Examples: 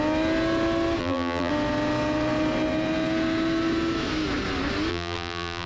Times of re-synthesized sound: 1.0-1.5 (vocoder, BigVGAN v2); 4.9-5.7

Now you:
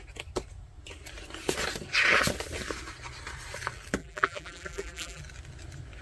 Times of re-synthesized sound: 4.0-5.2 (vocoder, BigVGAN v2)

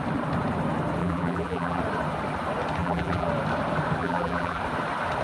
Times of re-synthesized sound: 1.0-1.8 (vocoder, BigVGAN v2); 2.8-3.3; 4.0-4.6